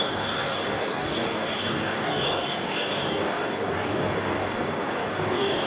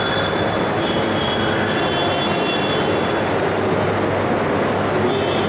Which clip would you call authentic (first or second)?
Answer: second